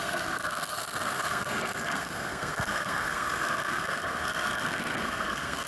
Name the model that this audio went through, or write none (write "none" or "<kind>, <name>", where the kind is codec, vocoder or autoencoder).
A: codec, SNAC